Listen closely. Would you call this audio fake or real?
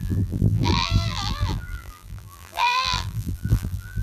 fake